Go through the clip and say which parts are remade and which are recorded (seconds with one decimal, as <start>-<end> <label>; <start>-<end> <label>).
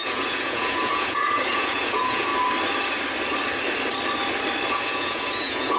0.0-2.3 remade; 2.3-4.7 recorded; 4.7-5.8 remade